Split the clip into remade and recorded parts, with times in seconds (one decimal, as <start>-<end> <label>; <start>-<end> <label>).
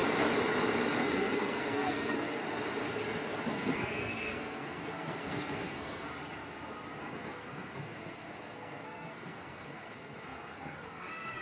0.0-1.0 recorded; 1.0-2.4 remade; 2.4-3.5 recorded; 3.5-6.1 remade; 6.1-7.0 recorded; 7.0-11.4 remade